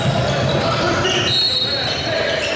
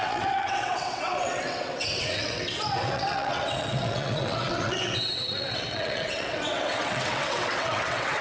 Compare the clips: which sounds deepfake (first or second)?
second